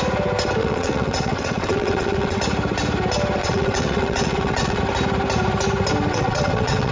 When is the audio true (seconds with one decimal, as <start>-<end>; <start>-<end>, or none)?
0.0-0.6; 2.4-3.4; 4.8-6.1